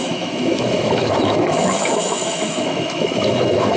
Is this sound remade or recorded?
remade